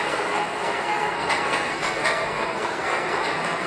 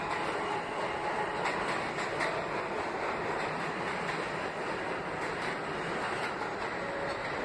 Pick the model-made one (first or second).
first